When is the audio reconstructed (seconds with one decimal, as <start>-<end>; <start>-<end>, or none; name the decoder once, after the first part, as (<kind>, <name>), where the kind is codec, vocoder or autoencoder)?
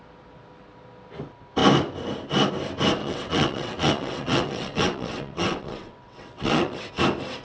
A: 3.0-6.9 (vocoder, WaveNeXt)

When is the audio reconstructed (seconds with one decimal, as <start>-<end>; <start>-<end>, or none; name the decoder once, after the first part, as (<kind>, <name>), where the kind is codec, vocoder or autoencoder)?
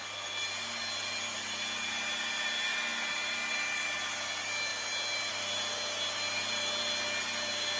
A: none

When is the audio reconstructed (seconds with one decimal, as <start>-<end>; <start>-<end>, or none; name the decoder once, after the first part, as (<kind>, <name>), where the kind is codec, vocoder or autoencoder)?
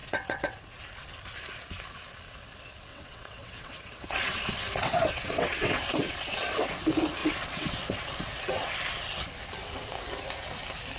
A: 0.0-0.6 (vocoder, WaveNeXt); 2.9-6.7; 7.2-8.7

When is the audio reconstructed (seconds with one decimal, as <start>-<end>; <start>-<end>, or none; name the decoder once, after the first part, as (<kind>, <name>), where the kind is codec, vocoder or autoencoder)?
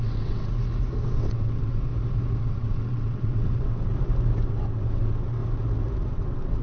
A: 0.0-0.5 (vocoder, WaveNeXt); 1.0-1.9; 2.4-3.9; 4.4-5.4; 6.1-6.6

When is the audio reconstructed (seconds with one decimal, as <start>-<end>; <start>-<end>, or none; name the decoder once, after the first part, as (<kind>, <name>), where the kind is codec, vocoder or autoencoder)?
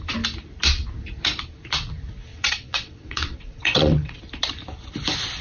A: 2.3-4.2 (vocoder, WaveNeXt)